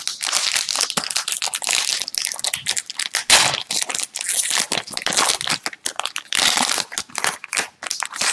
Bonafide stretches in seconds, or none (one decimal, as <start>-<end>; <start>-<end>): 0.0-8.3